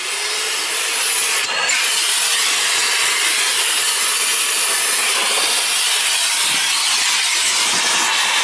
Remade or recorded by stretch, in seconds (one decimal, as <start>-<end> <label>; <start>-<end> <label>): 0.0-8.4 recorded